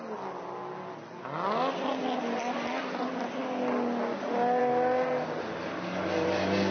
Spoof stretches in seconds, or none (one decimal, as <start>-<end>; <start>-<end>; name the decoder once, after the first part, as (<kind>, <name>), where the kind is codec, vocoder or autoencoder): none